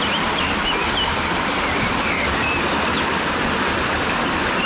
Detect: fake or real real